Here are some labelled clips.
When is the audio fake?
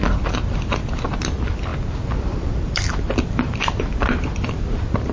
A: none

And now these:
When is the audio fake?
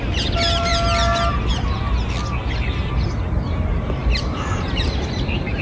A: 4.0-5.6 (vocoder, BigVGAN v2)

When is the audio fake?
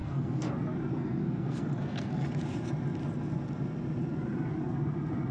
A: 0.0-0.5 (codec, SNAC); 0.9-2.3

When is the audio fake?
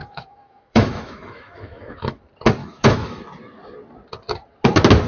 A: 0.0-2.2 (autoencoder, DAC-VAE); 2.6-3.2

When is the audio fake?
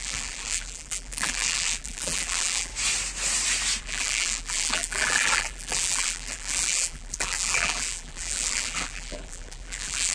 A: 0.0-2.7 (vocoder, BigVGAN v2); 3.8-10.1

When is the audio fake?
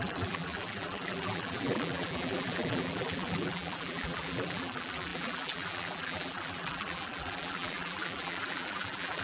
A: 0.0-9.2 (vocoder, BigVGAN v2)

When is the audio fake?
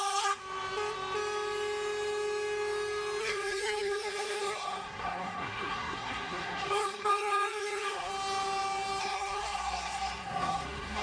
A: 0.0-0.4 (codec, SNAC); 3.2-8.1; 9.0-11.0